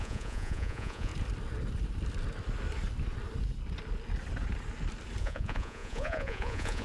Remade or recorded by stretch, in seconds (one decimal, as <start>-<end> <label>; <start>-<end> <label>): 0.0-1.1 remade; 1.1-5.2 recorded; 5.2-6.8 remade